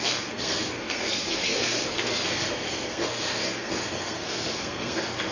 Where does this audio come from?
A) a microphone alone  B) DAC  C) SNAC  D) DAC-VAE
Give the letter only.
C